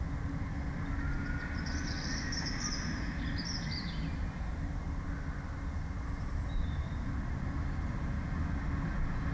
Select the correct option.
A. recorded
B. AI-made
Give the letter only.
A